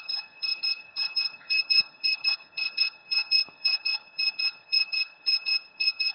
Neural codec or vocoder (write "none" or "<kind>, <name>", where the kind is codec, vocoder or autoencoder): codec, HILCodec